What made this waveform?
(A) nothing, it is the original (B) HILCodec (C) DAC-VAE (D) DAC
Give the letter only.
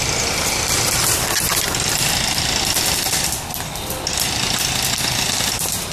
A